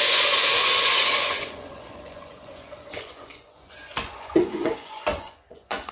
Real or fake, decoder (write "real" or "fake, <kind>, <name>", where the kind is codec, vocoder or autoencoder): fake, vocoder, Vocos